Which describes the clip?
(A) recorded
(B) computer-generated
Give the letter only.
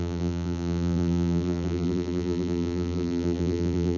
B